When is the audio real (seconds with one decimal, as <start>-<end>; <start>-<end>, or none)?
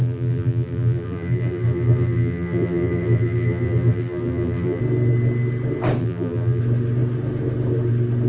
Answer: 4.8-6.0; 6.6-8.3